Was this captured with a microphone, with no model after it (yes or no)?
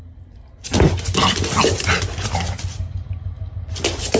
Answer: yes